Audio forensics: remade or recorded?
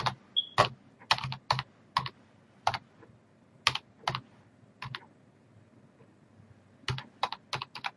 recorded